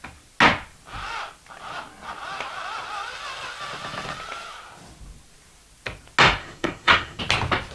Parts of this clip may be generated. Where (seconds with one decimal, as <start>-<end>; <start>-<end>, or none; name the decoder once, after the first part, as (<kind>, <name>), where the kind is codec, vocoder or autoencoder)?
6.4-7.2 (codec, SNAC)